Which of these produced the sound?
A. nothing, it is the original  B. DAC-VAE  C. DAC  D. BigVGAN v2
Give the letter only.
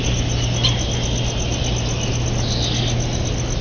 A